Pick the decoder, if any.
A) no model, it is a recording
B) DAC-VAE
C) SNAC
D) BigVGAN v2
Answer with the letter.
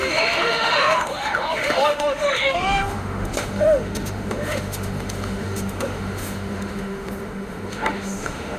B